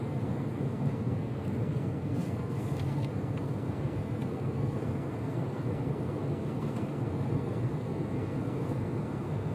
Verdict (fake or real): fake